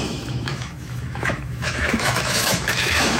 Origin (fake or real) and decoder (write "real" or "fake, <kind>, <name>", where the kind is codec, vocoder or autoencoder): fake, autoencoder, DAC-VAE